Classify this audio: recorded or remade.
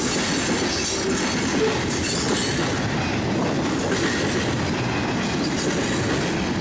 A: recorded